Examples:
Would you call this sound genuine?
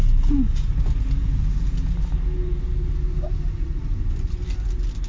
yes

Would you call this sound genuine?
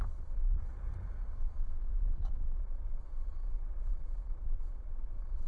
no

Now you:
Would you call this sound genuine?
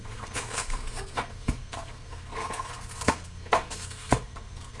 no